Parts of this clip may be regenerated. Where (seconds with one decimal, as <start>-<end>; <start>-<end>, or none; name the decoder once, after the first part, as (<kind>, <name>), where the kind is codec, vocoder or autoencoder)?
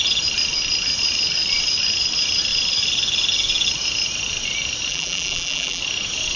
4.9-5.8 (vocoder, BigVGAN v2)